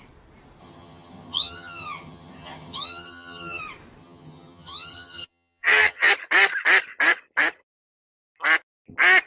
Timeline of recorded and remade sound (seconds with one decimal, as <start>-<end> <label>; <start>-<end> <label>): 0.0-0.6 recorded; 0.6-3.6 remade; 3.6-4.0 recorded; 4.0-6.1 remade; 6.1-9.3 recorded